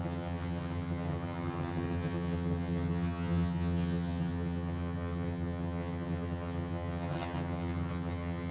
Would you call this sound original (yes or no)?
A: no